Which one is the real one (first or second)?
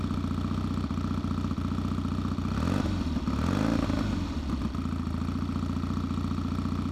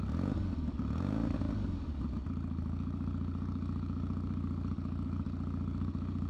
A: first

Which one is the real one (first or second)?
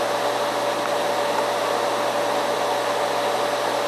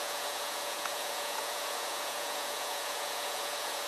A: first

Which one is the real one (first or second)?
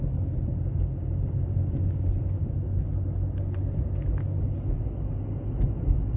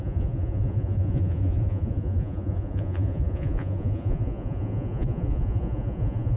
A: first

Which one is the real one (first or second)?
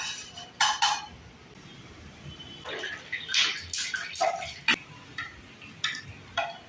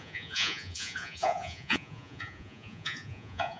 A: first